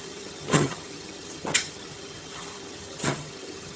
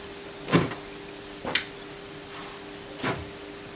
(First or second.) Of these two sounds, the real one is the second